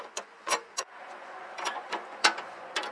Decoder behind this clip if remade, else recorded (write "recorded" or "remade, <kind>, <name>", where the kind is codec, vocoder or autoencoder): remade, vocoder, Vocos